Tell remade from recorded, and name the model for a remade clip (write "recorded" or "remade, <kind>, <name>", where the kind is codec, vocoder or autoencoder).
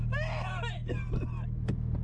recorded